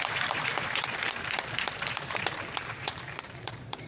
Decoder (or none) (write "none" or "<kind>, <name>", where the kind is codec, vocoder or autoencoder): vocoder, BigVGAN v2